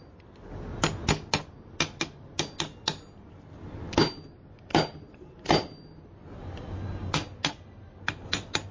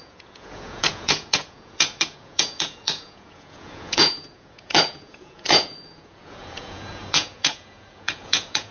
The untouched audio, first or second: first